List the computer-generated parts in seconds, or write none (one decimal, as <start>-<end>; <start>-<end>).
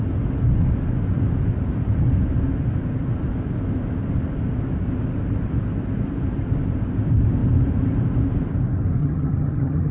9.0-9.9